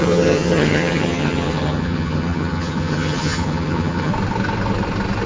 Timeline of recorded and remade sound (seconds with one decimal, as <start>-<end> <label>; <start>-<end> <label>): 0.0-4.1 remade; 4.1-5.3 recorded